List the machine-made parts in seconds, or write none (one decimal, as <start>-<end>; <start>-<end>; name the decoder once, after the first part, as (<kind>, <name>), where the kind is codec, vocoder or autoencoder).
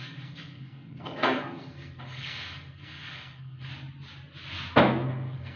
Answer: 0.0-3.7 (codec, SNAC); 4.8-5.6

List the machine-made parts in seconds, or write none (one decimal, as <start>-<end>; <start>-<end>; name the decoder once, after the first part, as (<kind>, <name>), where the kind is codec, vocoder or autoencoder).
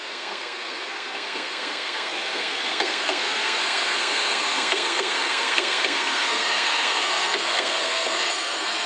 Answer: 0.0-8.9 (codec, SNAC)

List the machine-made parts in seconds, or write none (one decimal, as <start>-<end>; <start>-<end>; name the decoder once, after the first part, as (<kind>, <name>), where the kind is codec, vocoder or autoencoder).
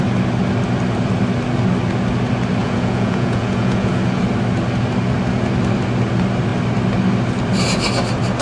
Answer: 2.6-4.2 (vocoder, Vocos)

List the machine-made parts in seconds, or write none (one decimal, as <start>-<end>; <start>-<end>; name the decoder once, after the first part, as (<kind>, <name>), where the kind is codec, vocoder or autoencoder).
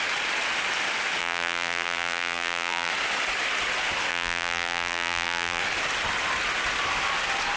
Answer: 1.2-2.9 (vocoder, BigVGAN v2); 4.1-5.6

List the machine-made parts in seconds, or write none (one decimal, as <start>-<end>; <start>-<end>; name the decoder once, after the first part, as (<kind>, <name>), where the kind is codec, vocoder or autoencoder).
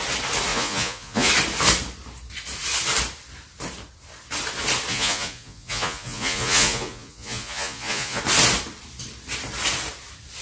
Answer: 0.5-1.3 (vocoder, Vocos); 4.9-8.2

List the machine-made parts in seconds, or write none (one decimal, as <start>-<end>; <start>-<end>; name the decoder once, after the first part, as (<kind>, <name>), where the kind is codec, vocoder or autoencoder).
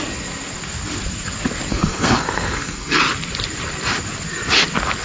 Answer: 1.7-3.0 (codec, SNAC)